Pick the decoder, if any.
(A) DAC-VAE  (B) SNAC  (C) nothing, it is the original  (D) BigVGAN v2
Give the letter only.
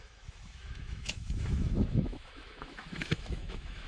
A